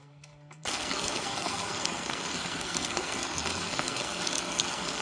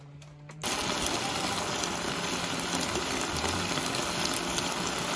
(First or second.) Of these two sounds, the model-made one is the first